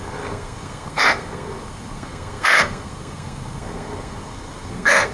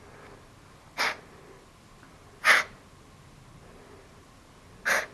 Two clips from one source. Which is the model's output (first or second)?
first